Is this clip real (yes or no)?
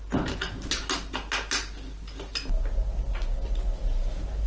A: yes